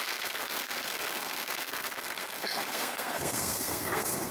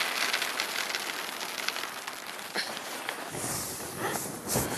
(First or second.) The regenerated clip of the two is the first